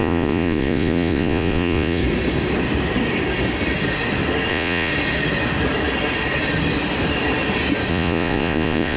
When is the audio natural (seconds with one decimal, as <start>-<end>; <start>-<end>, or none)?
2.0-4.5; 4.9-7.9